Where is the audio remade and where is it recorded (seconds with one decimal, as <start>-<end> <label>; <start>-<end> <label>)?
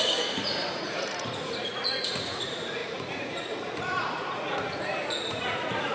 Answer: 0.0-5.9 remade